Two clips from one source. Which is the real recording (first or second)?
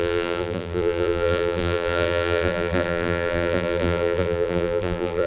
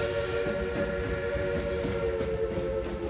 second